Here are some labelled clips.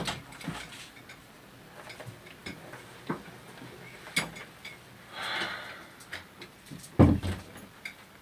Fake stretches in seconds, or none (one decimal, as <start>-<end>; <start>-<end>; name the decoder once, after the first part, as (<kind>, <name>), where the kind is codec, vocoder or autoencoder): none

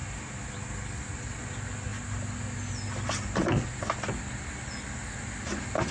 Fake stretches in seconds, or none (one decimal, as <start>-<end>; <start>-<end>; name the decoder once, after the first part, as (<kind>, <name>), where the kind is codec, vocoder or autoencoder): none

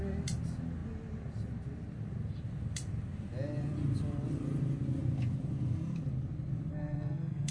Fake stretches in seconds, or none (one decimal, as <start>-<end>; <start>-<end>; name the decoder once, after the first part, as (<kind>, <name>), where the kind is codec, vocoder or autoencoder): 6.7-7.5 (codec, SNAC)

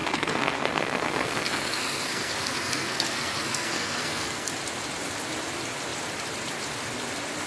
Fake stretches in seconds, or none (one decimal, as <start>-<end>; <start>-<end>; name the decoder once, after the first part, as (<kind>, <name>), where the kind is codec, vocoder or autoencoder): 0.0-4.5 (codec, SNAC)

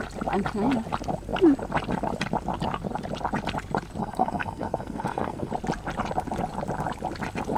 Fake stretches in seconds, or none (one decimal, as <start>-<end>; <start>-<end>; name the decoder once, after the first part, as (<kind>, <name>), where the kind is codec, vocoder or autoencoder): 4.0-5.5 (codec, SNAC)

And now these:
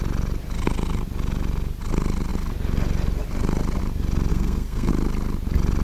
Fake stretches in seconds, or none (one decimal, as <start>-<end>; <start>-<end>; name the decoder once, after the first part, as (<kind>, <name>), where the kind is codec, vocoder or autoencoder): 4.3-4.9 (codec, SNAC)

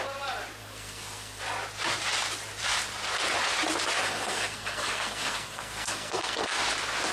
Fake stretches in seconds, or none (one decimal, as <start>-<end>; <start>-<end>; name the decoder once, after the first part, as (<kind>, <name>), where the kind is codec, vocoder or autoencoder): 0.6-1.4 (codec, SNAC); 4.0-6.6

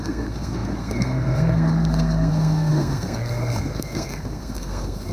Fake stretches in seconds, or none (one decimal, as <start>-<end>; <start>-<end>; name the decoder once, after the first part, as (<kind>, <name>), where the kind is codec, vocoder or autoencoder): 0.0-5.1 (codec, SNAC)